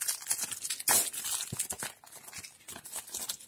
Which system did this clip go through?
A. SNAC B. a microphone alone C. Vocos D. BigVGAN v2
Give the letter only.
B